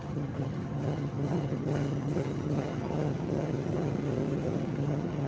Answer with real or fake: fake